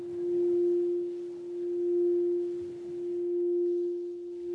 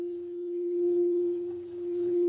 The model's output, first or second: second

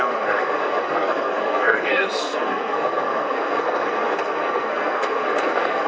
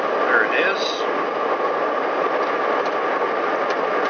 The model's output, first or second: first